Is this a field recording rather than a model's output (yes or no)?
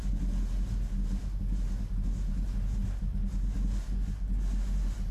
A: yes